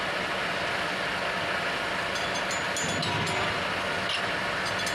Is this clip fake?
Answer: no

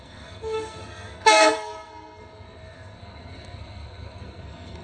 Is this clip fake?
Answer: yes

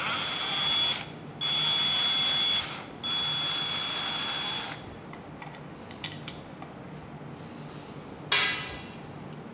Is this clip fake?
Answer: no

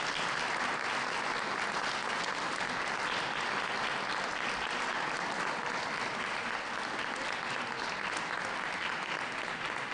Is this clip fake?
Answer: no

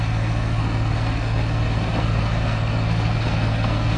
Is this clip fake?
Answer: yes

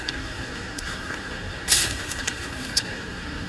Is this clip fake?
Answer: yes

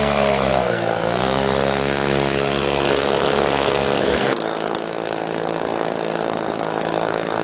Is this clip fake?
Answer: yes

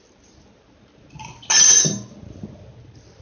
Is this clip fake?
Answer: no